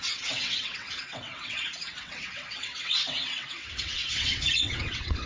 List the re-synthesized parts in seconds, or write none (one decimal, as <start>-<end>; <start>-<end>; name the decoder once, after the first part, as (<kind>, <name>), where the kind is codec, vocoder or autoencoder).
0.0-5.3 (vocoder, WaveNeXt)